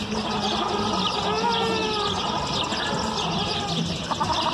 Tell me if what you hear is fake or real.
real